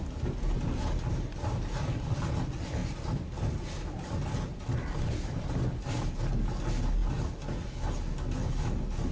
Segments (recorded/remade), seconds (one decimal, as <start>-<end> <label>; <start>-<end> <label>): 0.0-9.1 recorded